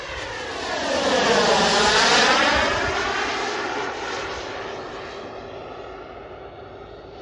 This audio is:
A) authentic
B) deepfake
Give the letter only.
A